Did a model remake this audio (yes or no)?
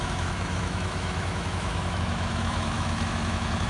yes